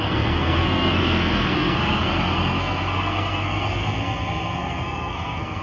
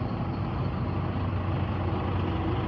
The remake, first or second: first